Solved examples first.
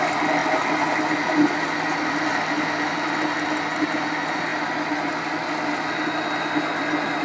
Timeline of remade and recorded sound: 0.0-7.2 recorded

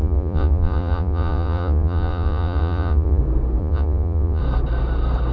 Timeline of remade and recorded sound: 0.0-3.2 remade; 3.2-3.6 recorded; 3.6-4.4 remade; 4.4-5.3 recorded